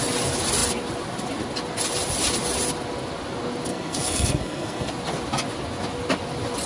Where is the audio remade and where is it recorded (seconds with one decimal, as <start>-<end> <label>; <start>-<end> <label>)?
0.0-3.7 recorded; 3.7-4.9 remade; 4.9-6.7 recorded